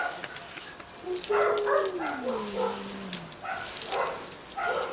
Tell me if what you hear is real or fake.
real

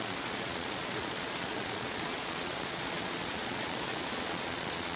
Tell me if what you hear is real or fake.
fake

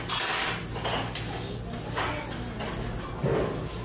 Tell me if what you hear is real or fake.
real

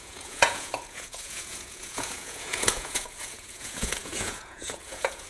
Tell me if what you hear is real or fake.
fake